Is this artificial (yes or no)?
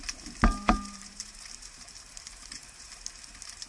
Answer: yes